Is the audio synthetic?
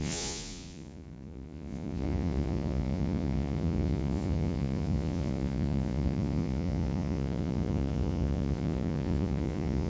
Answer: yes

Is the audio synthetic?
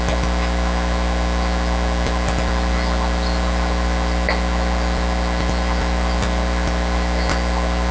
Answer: no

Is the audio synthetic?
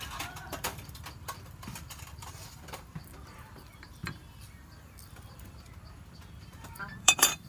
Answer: yes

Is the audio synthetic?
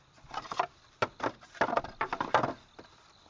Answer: yes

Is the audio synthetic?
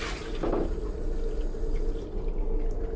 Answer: no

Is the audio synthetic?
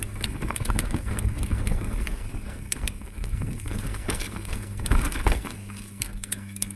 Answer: yes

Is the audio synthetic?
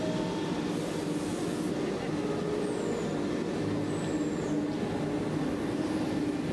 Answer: no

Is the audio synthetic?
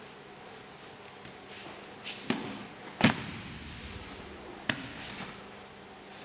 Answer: no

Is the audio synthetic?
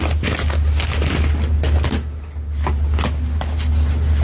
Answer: no